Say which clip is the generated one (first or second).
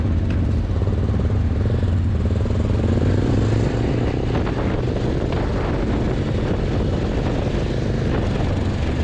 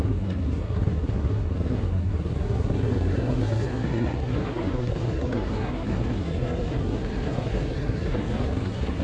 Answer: second